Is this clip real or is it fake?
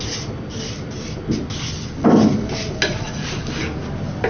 real